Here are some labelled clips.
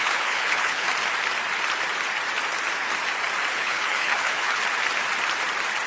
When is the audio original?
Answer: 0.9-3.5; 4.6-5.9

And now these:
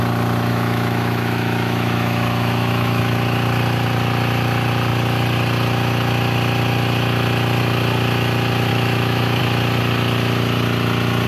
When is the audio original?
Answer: 0.0-0.5; 3.0-8.7; 9.4-11.3

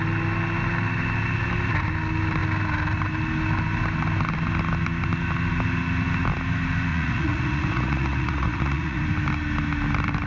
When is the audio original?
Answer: 0.0-6.9; 9.0-10.3